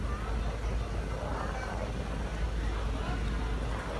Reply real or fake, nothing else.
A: real